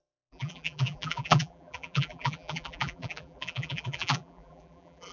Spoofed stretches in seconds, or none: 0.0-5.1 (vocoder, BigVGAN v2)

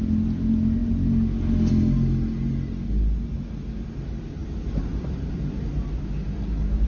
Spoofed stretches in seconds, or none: 4.4-5.4 (vocoder, BigVGAN v2)

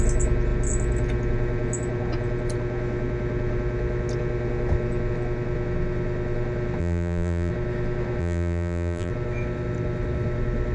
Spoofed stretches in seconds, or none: 6.8-7.5 (vocoder, BigVGAN v2); 8.2-9.1